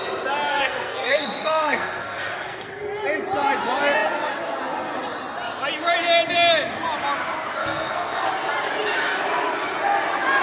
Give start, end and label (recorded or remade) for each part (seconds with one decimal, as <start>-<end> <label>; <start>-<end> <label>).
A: 0.0-0.5 recorded; 0.5-2.8 remade; 2.8-7.6 recorded; 7.6-8.3 remade; 8.3-10.4 recorded